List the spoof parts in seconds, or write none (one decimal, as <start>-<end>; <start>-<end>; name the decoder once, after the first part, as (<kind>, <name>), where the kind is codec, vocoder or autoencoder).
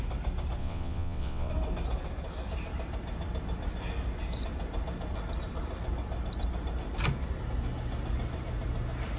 0.6-1.5 (vocoder, WaveNeXt)